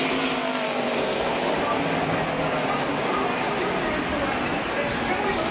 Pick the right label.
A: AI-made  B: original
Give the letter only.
B